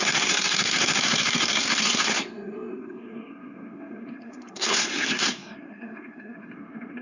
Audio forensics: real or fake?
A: fake